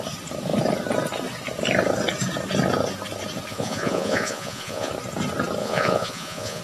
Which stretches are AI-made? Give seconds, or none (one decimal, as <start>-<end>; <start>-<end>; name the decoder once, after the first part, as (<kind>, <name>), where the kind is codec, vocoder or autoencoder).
3.5-4.9 (vocoder, Vocos); 5.6-6.6

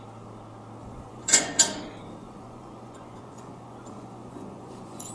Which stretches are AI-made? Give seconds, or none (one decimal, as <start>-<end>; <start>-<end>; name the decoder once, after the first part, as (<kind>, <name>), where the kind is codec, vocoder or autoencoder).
0.8-1.5 (vocoder, Vocos); 2.2-5.1

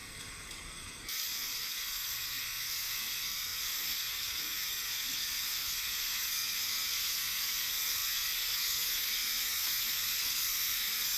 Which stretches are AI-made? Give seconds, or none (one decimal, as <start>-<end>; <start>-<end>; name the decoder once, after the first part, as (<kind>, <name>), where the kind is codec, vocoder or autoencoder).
0.0-11.2 (codec, SNAC)